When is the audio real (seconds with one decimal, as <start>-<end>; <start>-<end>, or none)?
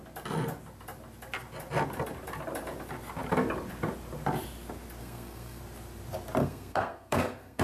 0.0-5.0; 5.6-6.4